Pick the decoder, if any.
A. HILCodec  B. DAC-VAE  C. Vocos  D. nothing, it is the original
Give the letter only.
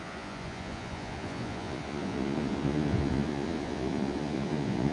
C